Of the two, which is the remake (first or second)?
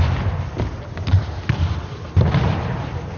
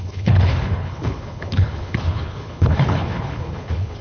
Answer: second